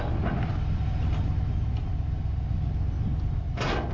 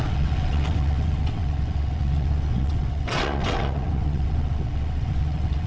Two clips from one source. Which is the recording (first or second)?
first